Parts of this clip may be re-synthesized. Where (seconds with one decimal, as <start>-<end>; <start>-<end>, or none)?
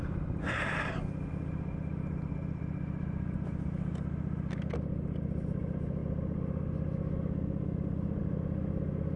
none